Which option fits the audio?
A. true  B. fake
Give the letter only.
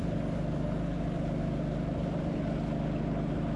A